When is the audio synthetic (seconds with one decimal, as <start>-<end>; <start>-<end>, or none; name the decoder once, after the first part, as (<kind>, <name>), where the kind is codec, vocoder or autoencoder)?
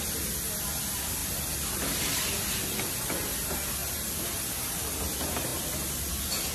none